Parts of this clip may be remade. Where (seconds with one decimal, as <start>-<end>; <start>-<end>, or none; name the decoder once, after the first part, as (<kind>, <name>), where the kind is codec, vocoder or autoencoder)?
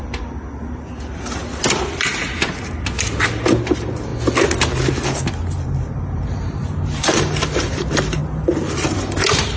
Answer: 0.6-1.4 (vocoder, BigVGAN v2); 3.5-4.1; 5.3-9.6